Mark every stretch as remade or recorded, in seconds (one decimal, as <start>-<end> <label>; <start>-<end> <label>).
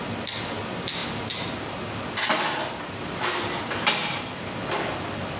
0.0-5.4 recorded